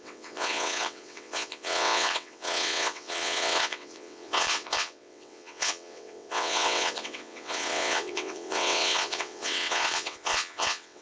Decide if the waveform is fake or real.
fake